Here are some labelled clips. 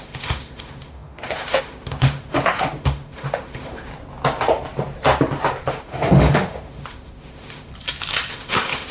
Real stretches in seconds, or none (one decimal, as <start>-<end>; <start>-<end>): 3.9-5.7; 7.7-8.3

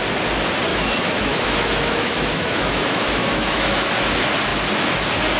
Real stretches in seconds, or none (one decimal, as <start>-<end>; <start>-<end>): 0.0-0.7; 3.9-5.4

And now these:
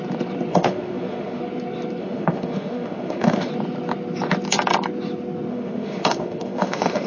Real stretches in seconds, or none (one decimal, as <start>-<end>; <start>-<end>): 0.0-0.5; 1.4-2.0; 3.5-5.5

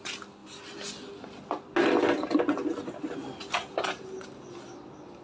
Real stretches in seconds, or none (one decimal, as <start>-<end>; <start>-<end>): 0.0-5.2

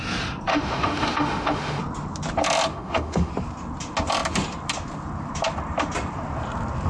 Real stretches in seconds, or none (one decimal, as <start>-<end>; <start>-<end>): 0.0-0.5; 1.8-2.7; 3.3-6.9

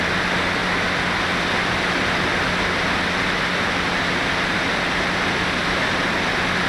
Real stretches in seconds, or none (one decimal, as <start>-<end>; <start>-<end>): 0.0-6.7

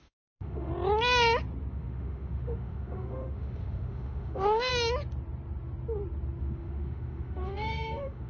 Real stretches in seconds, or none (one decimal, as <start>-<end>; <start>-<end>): 0.7-1.7; 4.7-6.4